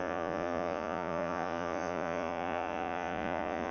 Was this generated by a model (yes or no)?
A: yes